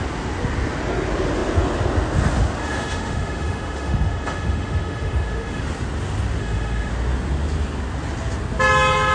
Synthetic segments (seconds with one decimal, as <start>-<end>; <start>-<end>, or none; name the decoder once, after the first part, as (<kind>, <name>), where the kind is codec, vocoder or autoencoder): 2.6-5.6 (autoencoder, DAC-VAE); 6.4-6.9